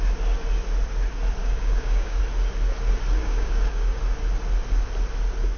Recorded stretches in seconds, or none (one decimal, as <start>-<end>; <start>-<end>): 0.0-1.4; 2.2-3.2; 4.0-5.6